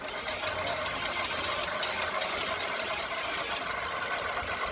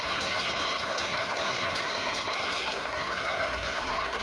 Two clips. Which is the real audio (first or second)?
first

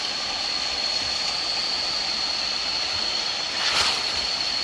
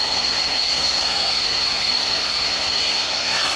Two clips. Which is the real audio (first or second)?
first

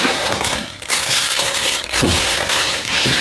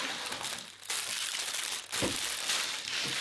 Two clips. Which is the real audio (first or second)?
second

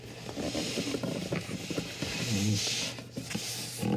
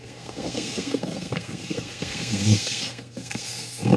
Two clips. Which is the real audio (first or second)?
first